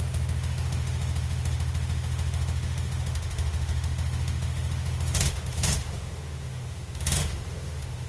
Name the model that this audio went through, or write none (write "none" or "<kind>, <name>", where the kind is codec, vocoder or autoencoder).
autoencoder, DAC-VAE